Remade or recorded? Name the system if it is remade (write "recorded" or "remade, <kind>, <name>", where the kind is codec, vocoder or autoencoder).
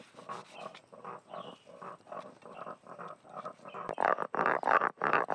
recorded